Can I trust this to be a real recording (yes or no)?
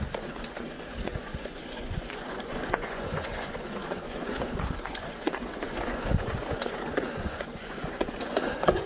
no